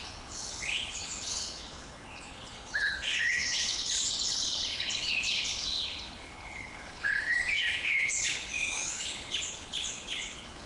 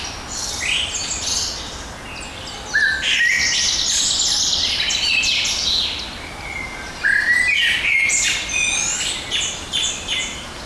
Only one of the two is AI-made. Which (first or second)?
first